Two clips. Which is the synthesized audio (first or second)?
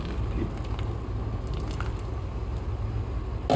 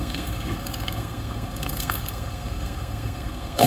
second